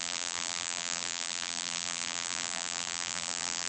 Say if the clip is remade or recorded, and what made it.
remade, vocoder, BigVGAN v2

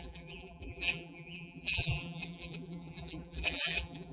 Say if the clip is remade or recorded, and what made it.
remade, vocoder, BigVGAN v2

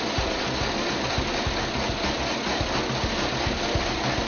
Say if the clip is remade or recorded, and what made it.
recorded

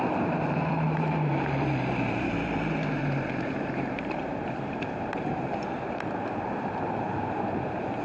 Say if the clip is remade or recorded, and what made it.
remade, vocoder, BigVGAN v2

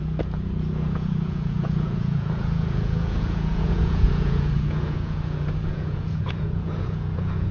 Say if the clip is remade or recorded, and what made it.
remade, vocoder, Vocos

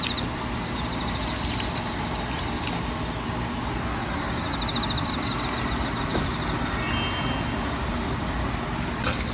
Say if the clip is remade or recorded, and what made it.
recorded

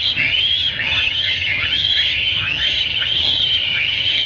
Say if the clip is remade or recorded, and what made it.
remade, vocoder, HiFi-GAN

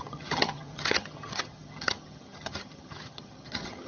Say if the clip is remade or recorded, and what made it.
remade, vocoder, HiFi-GAN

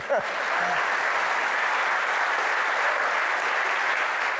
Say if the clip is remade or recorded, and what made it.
recorded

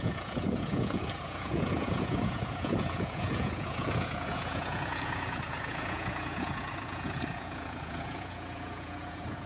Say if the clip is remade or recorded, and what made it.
remade, vocoder, Vocos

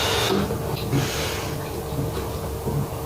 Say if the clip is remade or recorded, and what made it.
recorded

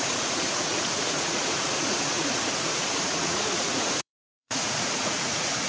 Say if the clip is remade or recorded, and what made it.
remade, vocoder, Vocos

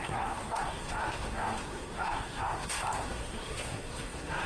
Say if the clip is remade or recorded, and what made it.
remade, codec, SNAC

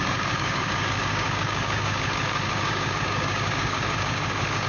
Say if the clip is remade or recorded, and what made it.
remade, codec, DAC